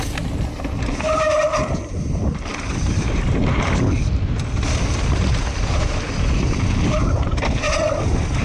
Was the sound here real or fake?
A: real